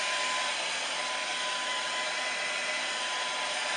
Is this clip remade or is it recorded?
recorded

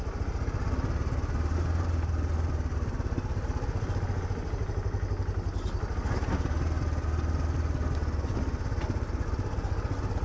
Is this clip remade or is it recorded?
recorded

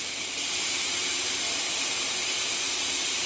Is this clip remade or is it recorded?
remade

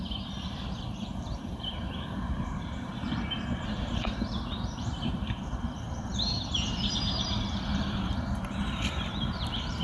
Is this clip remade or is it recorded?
remade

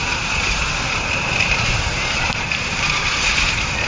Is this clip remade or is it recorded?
remade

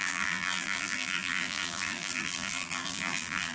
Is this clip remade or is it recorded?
remade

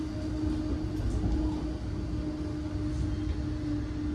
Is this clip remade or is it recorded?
recorded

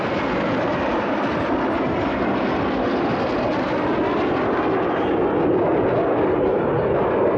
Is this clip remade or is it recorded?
recorded